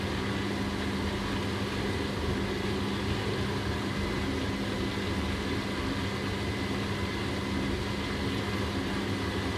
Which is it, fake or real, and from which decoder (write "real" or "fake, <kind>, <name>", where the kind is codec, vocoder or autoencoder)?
real